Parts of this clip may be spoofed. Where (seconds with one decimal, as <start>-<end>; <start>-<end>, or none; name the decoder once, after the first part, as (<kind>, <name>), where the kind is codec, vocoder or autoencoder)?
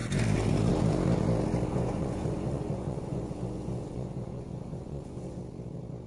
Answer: 1.7-5.4 (vocoder, Vocos)